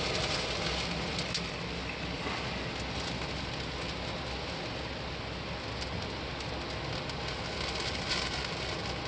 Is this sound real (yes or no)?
yes